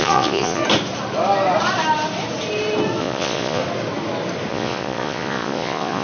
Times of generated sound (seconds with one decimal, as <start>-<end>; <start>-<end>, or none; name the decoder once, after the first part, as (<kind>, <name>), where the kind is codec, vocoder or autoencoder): 0.0-0.6 (vocoder, Vocos); 3.0-3.6; 4.5-6.0